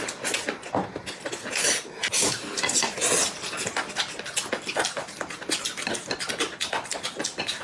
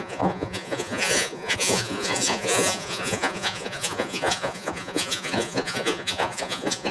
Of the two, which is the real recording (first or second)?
first